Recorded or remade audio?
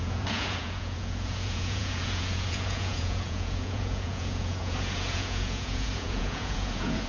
remade